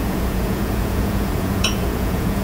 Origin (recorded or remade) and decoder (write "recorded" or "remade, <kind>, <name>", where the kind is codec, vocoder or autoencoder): remade, vocoder, Vocos